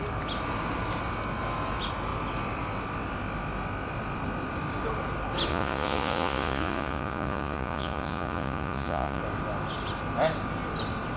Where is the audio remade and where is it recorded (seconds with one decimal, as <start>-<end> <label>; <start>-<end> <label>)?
0.0-5.5 recorded; 5.5-9.2 remade; 9.2-11.2 recorded